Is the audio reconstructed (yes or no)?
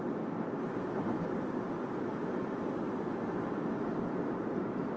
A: no